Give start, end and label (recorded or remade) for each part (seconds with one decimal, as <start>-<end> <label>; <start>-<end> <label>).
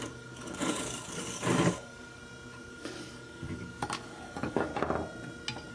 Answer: 0.0-2.2 remade; 2.2-2.7 recorded; 2.7-4.7 remade; 4.7-5.7 recorded